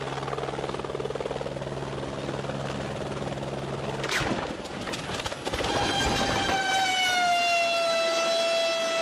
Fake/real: real